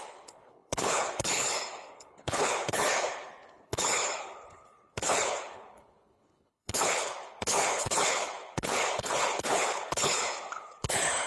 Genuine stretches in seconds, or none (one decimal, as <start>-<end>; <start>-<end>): none